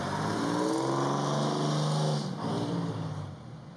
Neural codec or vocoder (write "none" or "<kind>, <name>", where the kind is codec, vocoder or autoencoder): none